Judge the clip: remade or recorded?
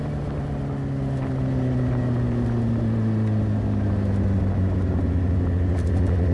recorded